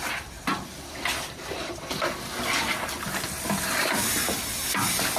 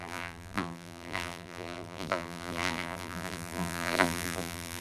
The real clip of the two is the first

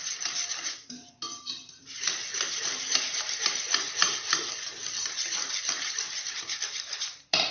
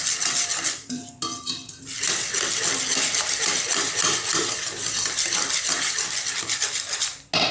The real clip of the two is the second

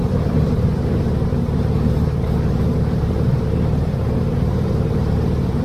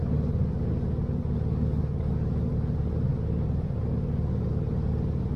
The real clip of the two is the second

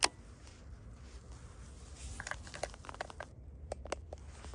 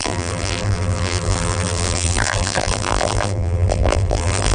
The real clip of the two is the first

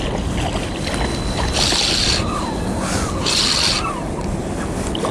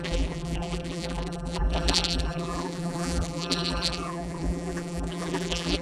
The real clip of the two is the first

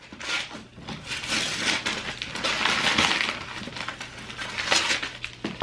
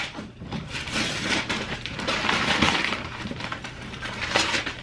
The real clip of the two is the first